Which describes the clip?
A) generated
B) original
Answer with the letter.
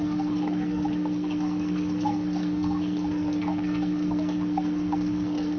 A